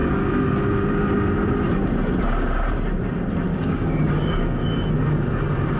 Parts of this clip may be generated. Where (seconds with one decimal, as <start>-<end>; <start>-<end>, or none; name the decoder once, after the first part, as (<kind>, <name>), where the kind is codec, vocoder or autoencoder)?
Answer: 0.0-0.6 (codec, DAC); 3.5-4.7